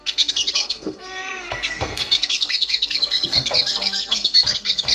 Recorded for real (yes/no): no